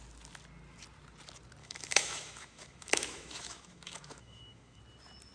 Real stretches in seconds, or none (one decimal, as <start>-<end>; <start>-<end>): 0.0-1.6; 4.8-5.3